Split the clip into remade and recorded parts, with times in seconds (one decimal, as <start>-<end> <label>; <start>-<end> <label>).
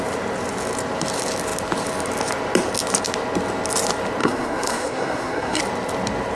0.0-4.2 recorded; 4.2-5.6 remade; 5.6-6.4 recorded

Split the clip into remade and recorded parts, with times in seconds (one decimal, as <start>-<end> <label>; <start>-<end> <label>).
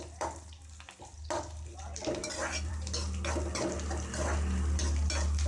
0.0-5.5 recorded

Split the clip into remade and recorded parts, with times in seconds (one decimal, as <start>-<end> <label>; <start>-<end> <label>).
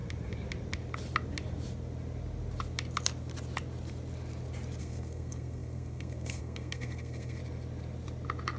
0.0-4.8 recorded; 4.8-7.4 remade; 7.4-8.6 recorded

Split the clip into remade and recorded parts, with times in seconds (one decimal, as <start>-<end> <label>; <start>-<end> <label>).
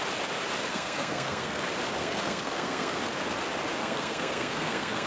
0.0-0.7 recorded; 0.7-1.6 remade; 1.6-2.0 recorded; 2.0-3.0 remade; 3.0-3.8 recorded; 3.8-5.1 remade